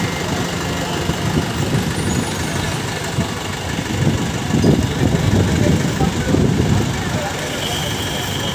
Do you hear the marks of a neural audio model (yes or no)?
no